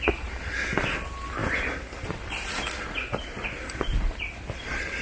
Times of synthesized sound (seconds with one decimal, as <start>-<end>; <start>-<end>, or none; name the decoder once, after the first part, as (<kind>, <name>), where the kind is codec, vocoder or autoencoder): none